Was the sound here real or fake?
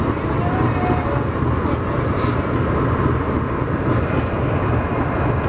real